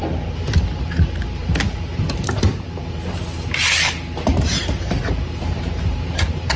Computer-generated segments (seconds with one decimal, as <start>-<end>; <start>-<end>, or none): 4.3-6.6